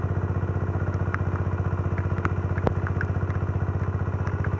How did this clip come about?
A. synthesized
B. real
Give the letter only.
B